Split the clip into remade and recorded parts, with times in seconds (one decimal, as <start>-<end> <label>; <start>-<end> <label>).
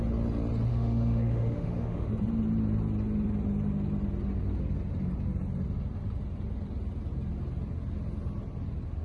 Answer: 0.0-0.7 recorded; 0.7-2.1 remade; 2.1-9.0 recorded